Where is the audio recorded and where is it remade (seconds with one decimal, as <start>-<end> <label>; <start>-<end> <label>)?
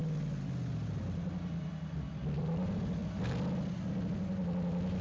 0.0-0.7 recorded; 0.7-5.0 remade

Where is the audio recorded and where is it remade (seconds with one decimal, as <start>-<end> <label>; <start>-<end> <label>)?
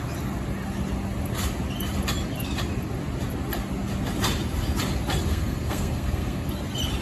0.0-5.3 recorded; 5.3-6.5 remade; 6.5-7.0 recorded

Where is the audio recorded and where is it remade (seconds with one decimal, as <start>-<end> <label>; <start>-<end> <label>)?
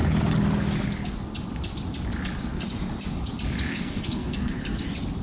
0.0-3.7 recorded; 3.7-4.6 remade; 4.6-5.2 recorded